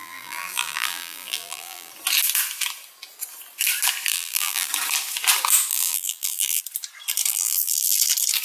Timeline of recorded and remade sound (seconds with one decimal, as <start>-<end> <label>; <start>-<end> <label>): 0.0-1.9 remade; 1.9-4.1 recorded; 4.1-4.7 remade; 4.7-5.7 recorded; 5.7-6.6 remade; 6.6-7.3 recorded; 7.3-8.0 remade; 8.0-8.4 recorded